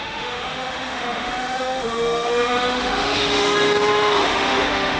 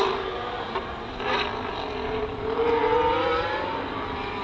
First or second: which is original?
second